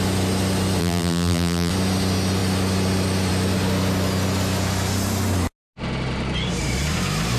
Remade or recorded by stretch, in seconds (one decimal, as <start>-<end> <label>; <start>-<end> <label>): 0.0-0.8 recorded; 0.8-1.7 remade; 1.7-7.4 recorded

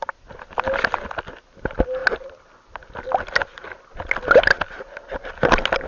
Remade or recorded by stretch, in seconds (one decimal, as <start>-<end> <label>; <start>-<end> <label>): 0.0-5.9 recorded

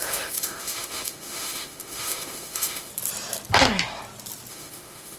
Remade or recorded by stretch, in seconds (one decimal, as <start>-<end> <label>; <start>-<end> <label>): 0.0-2.9 remade; 2.9-4.5 recorded; 4.5-5.2 remade

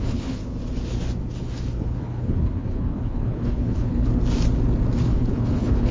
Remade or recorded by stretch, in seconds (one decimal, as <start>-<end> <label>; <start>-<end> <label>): 0.0-0.4 remade; 0.4-1.4 recorded; 1.4-4.1 remade; 4.1-5.0 recorded; 5.0-5.9 remade

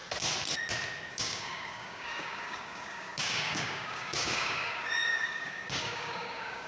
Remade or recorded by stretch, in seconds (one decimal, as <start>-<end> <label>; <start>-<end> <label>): 0.0-1.1 recorded; 1.1-6.7 remade

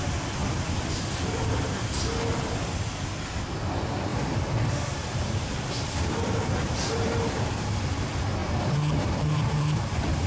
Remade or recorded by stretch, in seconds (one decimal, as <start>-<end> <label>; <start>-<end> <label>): 0.0-0.4 recorded; 0.4-1.2 remade; 1.2-4.1 recorded; 4.1-7.8 remade; 7.8-8.4 recorded; 8.4-9.8 remade; 9.8-10.3 recorded